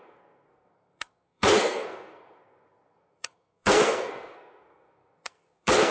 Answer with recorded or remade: remade